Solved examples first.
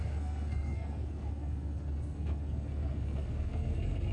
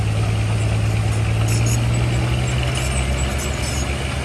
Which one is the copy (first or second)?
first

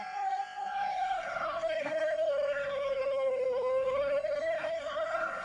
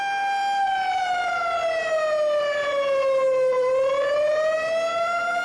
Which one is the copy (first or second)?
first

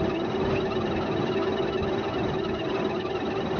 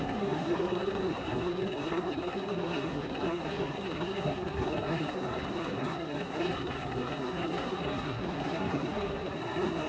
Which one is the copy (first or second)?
second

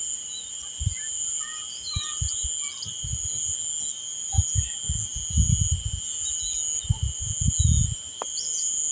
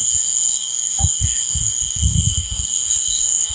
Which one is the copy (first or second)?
second